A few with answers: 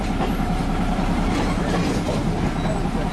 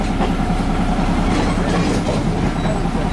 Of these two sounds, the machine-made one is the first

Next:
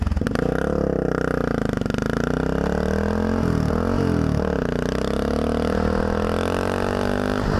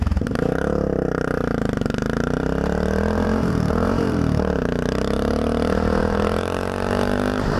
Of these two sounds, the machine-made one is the second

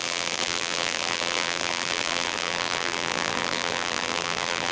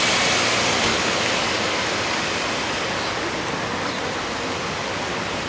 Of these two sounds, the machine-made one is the first